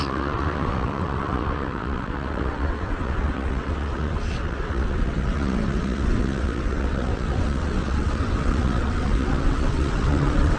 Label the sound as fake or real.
fake